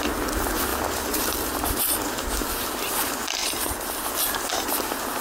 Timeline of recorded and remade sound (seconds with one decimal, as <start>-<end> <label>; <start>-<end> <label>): 0.0-0.7 recorded; 0.7-1.8 remade; 1.8-5.2 recorded